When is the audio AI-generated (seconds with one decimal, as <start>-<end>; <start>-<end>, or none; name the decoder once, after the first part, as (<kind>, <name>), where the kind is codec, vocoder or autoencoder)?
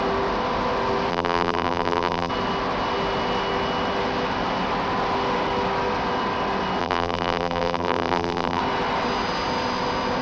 1.1-2.3 (vocoder, BigVGAN v2); 6.8-8.6